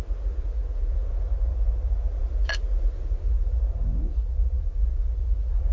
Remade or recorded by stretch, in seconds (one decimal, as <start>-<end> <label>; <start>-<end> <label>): 0.0-5.7 recorded